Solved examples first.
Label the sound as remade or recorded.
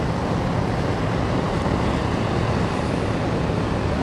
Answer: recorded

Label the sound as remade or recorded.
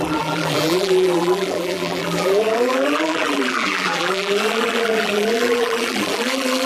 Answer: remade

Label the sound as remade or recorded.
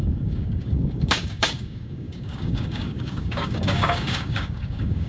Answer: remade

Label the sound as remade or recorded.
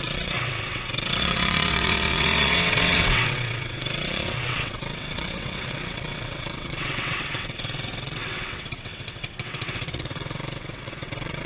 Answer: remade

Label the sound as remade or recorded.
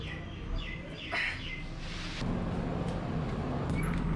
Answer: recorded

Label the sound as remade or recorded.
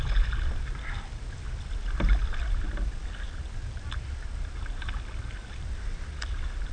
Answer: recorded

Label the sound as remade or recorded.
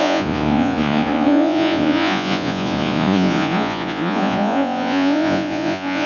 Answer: remade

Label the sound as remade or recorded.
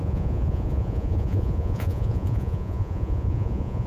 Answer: remade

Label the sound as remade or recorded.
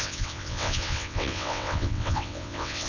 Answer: remade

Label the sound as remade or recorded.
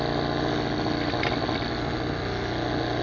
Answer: recorded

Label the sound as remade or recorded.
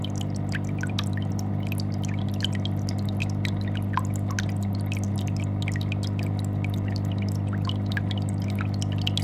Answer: recorded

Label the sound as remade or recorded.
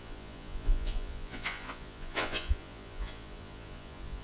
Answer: remade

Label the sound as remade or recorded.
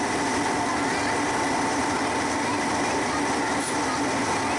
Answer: recorded